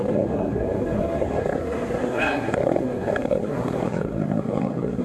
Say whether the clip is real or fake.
fake